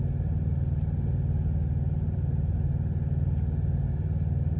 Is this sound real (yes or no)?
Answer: yes